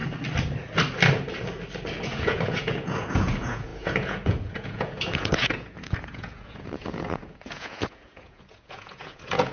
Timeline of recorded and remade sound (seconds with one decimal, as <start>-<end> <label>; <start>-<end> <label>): 0.0-2.0 recorded; 2.0-9.5 remade